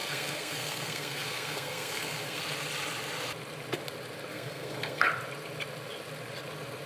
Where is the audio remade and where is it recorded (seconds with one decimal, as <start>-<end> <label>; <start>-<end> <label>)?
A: 0.0-2.4 remade; 2.4-4.3 recorded; 4.3-5.0 remade; 5.0-6.9 recorded